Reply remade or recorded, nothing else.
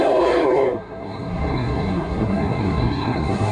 remade